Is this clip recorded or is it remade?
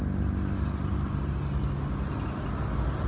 recorded